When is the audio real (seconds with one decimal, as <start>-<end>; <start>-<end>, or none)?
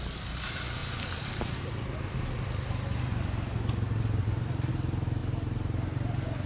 0.0-6.5